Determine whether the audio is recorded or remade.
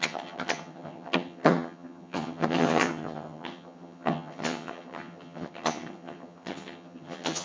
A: remade